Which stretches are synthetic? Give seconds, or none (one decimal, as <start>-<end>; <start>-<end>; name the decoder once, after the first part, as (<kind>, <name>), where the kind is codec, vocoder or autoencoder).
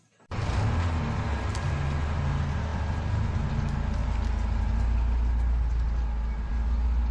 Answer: none